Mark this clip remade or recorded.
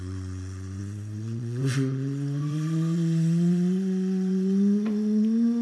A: remade